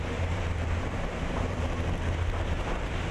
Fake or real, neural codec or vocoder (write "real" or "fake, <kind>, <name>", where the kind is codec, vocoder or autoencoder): fake, vocoder, BigVGAN v2